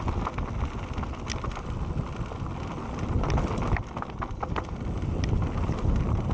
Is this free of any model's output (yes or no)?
yes